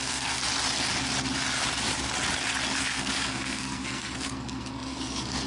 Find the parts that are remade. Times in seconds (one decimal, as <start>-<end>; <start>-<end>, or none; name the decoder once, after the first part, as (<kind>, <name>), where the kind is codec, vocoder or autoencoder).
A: 0.0-0.4 (codec, SNAC); 2.8-5.5